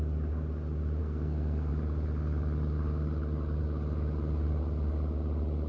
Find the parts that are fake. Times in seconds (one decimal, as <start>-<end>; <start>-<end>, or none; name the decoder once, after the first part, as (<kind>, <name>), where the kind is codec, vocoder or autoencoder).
1.0-1.7 (codec, SNAC)